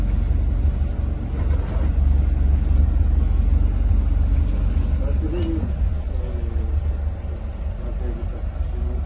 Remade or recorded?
recorded